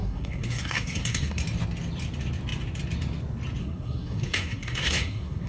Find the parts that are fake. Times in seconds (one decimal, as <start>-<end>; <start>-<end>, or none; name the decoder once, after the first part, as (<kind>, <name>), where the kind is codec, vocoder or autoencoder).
0.0-1.4 (codec, SNAC); 3.6-5.5